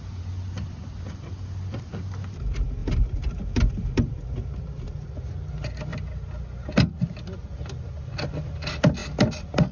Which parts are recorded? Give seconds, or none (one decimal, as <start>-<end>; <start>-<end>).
0.0-9.7